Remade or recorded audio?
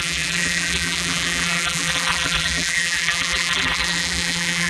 remade